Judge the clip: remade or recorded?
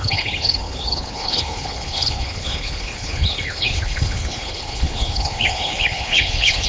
remade